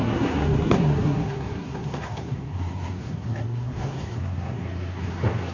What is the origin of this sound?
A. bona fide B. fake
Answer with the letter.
B